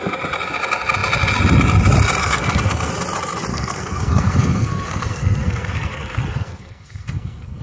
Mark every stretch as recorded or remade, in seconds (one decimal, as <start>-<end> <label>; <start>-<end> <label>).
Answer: 0.0-2.2 recorded; 2.2-2.9 remade; 2.9-3.5 recorded; 3.5-7.6 remade

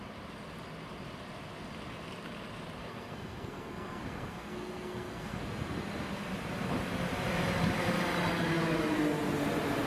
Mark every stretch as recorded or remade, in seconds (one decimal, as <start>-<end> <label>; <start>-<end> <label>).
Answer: 0.0-2.8 recorded; 2.8-5.4 remade; 5.4-9.9 recorded

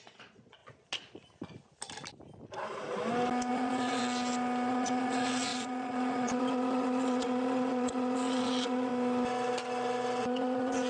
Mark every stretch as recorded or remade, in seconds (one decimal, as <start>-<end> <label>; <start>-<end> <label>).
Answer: 0.0-0.6 remade; 0.6-3.5 recorded; 3.5-4.0 remade; 4.0-4.7 recorded; 4.7-8.9 remade; 8.9-10.2 recorded; 10.2-10.9 remade

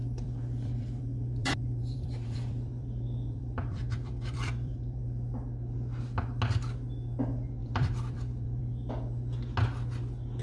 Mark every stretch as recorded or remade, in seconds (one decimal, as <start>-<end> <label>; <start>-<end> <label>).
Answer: 0.0-5.0 remade; 5.0-7.6 recorded; 7.6-8.6 remade; 8.6-10.4 recorded

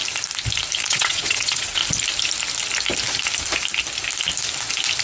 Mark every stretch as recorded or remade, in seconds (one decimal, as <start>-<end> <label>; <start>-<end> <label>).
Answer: 0.0-0.8 recorded; 0.8-1.8 remade; 1.8-5.0 recorded

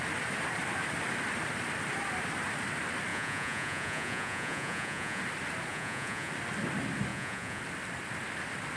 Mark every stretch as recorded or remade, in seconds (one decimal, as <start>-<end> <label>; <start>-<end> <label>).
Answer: 0.0-3.1 recorded; 3.1-5.2 remade; 5.2-5.7 recorded; 5.7-6.3 remade; 6.3-7.1 recorded; 7.1-7.6 remade; 7.6-8.8 recorded